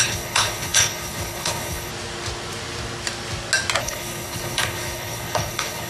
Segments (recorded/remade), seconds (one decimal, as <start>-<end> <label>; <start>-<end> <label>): 0.0-1.9 remade; 1.9-3.8 recorded; 3.8-5.9 remade